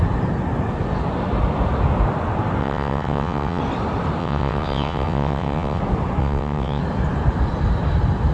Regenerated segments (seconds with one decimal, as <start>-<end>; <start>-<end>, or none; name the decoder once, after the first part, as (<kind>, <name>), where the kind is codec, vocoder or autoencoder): 2.6-3.6 (vocoder, WaveNeXt); 4.2-5.8; 6.2-6.8

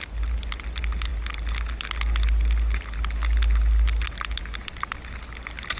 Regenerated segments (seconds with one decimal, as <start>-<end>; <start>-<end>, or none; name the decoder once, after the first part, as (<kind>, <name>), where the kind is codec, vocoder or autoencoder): none

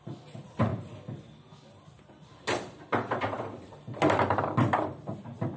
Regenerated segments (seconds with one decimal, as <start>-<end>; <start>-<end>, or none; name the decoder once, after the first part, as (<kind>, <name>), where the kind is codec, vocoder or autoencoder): none

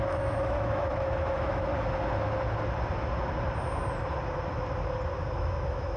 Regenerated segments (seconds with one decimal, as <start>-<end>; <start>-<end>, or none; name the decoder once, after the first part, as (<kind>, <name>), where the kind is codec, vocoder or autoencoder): 0.0-1.7 (autoencoder, DAC-VAE); 5.3-6.0

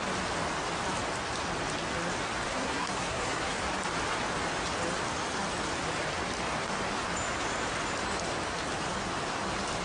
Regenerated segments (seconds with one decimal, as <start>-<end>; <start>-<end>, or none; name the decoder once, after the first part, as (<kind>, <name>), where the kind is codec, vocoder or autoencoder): 2.5-3.6 (codec, SNAC)

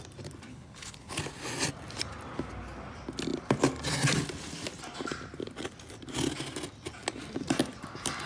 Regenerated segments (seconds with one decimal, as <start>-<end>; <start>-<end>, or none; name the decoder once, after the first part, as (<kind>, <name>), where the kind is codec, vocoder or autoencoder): 0.5-1.2 (codec, HILCodec)

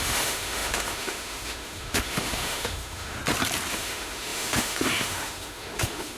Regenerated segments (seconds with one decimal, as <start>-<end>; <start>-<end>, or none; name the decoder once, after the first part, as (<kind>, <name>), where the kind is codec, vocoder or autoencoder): 0.0-3.2 (autoencoder, DAC-VAE); 3.7-6.2